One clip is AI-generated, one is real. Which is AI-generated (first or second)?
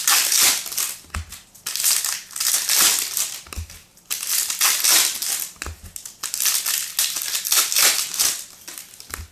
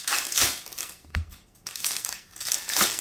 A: second